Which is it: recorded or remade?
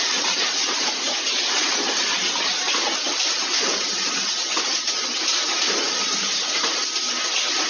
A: recorded